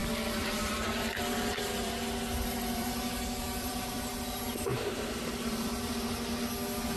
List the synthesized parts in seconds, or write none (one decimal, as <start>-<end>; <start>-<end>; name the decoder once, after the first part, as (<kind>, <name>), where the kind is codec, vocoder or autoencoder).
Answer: 0.0-4.2 (vocoder, BigVGAN v2); 4.7-7.0